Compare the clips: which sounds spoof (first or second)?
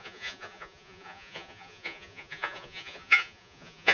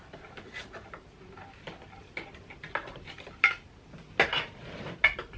first